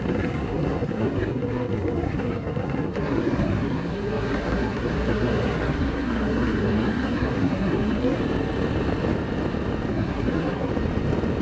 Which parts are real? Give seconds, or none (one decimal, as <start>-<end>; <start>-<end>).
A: 8.2-9.9; 10.7-11.4